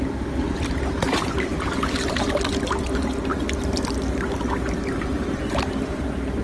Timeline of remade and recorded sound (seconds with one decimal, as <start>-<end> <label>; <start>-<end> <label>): 0.0-6.4 recorded